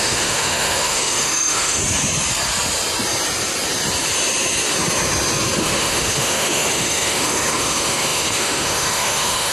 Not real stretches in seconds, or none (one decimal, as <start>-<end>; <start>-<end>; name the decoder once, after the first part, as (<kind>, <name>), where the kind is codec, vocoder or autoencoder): 0.0-1.8 (autoencoder, DAC-VAE); 5.6-9.5